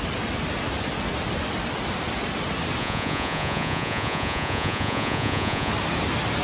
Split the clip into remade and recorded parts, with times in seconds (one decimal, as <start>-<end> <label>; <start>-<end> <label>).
0.0-2.8 recorded; 2.8-5.7 remade; 5.7-6.4 recorded